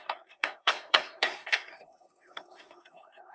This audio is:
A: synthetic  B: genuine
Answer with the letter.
A